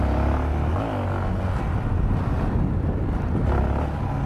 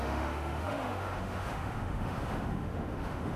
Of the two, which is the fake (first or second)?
second